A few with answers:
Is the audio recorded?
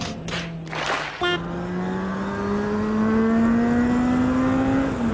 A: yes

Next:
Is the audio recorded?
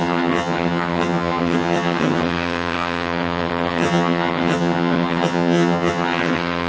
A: no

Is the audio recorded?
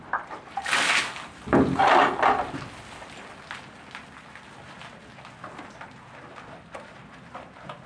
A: yes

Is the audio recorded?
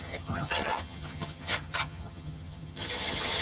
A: no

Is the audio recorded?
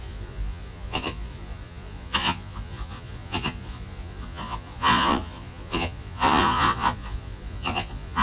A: no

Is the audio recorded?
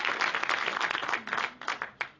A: yes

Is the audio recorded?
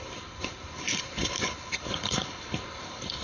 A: no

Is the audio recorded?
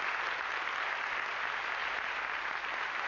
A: yes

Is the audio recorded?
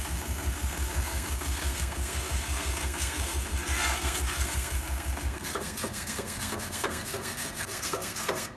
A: no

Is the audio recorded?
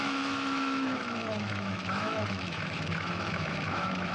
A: no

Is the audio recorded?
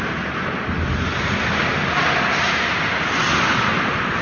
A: yes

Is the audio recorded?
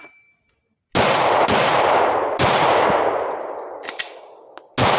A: yes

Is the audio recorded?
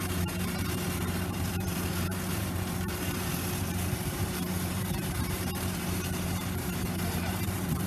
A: no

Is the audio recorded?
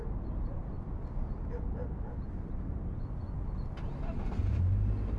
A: yes